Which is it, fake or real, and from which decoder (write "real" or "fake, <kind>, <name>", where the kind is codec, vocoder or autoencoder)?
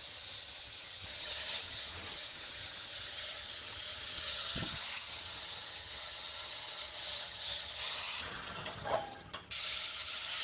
fake, vocoder, HiFi-GAN